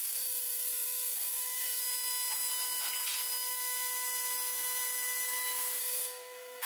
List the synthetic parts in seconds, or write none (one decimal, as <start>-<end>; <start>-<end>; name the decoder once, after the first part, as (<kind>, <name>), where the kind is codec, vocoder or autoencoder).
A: 0.0-1.8 (codec, SNAC); 5.8-6.7

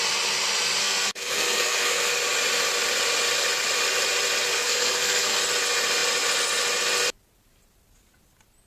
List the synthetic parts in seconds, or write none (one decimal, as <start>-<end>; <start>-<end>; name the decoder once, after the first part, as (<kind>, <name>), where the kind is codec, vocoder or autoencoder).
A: 0.8-2.1 (codec, SNAC); 4.5-5.4

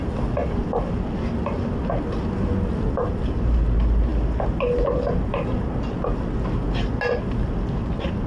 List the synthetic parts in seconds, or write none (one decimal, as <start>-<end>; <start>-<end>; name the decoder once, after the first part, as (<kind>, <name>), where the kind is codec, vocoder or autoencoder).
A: none